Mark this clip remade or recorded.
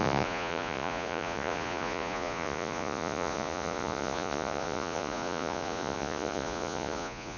remade